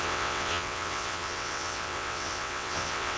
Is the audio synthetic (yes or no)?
yes